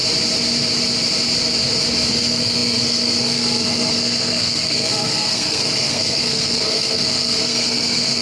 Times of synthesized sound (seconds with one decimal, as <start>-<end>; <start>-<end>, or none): 2.1-8.2